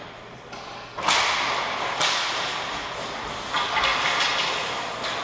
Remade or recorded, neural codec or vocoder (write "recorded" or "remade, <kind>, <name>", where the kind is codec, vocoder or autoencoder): recorded